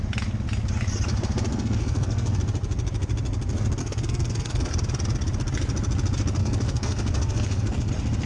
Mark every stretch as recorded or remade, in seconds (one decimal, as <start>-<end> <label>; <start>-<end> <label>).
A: 0.0-1.5 recorded; 1.5-2.4 remade; 2.4-3.8 recorded; 3.8-4.7 remade; 4.7-6.4 recorded; 6.4-7.9 remade; 7.9-8.3 recorded